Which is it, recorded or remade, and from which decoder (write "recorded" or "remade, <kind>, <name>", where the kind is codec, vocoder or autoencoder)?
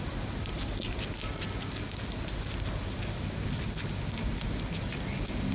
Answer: recorded